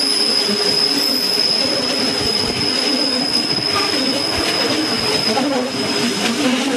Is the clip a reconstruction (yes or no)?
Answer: no